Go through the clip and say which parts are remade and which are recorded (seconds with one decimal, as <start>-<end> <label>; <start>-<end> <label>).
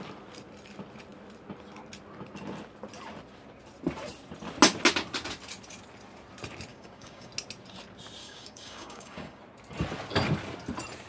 0.0-6.7 recorded; 6.7-7.3 remade; 7.3-8.2 recorded; 8.2-9.4 remade; 9.4-11.1 recorded